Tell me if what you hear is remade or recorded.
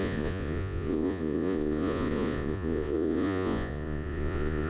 remade